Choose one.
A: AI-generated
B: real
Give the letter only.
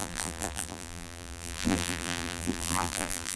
A